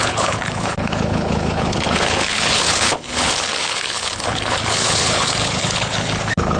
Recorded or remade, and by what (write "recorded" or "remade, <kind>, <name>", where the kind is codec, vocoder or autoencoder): remade, codec, HILCodec